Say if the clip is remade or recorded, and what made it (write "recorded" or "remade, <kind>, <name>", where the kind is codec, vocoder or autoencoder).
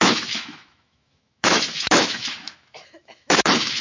remade, autoencoder, DAC-VAE